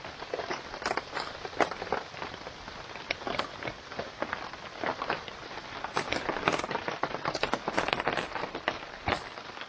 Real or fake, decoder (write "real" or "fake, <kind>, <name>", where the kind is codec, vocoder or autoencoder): real